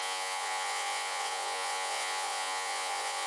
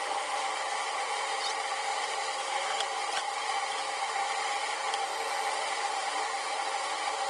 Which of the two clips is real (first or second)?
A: second